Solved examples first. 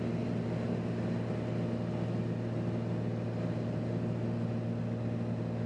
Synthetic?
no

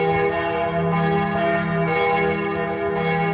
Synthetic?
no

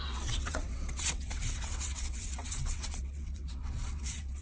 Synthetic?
yes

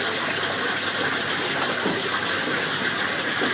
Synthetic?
no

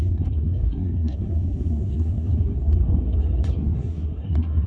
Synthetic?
yes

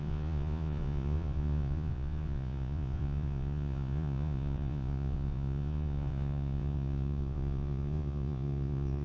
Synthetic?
yes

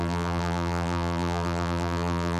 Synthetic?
yes